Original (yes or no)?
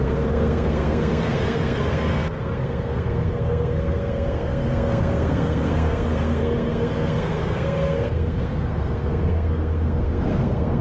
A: no